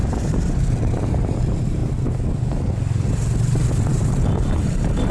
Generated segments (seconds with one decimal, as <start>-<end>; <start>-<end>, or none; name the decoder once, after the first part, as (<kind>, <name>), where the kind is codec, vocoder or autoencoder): 0.0-1.8 (vocoder, BigVGAN v2); 3.7-5.1